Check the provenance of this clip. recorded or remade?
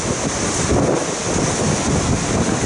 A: recorded